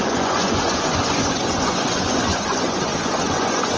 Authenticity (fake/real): fake